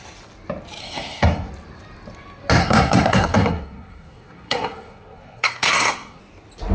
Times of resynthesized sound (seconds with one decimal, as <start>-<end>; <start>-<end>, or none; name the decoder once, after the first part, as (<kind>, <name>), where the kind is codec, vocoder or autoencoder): 0.8-1.5 (codec, SNAC); 2.6-6.2